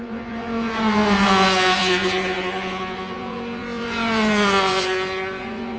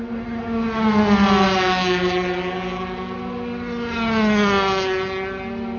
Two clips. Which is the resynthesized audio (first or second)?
first